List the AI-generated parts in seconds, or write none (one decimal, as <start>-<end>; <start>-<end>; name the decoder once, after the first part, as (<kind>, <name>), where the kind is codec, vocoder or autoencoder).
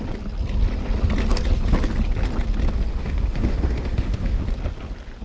2.9-4.4 (autoencoder, DAC-VAE)